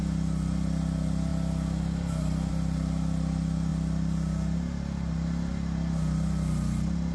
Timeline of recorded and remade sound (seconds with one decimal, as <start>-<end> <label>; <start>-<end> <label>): 0.0-7.1 recorded